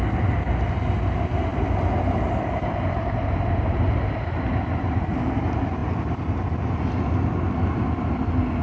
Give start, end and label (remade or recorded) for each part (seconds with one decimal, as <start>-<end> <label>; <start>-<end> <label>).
0.0-8.6 recorded